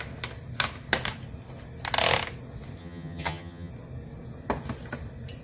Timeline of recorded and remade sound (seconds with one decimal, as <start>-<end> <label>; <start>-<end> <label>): 0.0-2.8 recorded; 2.8-3.7 remade; 3.7-5.4 recorded